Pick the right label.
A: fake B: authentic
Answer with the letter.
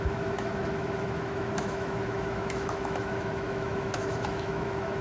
A